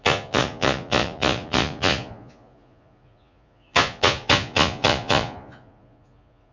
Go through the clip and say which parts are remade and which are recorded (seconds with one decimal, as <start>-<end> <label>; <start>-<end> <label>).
0.0-6.5 remade